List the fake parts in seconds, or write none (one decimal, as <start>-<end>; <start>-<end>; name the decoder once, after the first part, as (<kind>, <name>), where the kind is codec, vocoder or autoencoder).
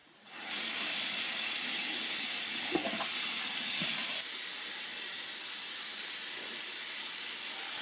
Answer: 6.5-7.1 (vocoder, BigVGAN v2)